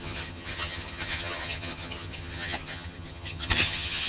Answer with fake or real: fake